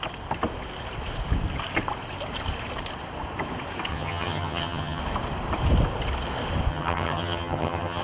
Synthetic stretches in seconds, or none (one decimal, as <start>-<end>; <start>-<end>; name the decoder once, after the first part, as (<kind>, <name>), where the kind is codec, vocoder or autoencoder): 3.9-5.0 (vocoder, HiFi-GAN); 6.7-8.0